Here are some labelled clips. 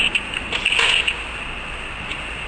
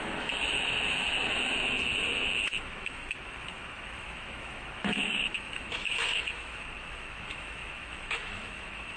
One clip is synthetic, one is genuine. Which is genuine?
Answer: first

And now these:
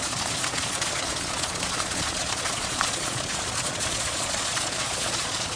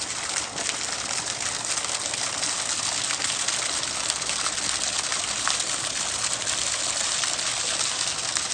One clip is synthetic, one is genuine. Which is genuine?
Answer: second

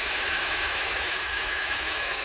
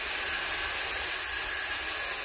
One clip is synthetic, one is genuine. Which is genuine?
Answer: second